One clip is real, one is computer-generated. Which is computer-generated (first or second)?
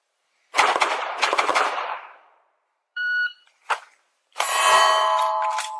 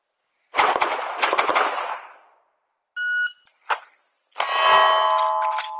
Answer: first